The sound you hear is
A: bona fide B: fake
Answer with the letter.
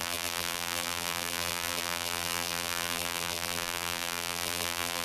B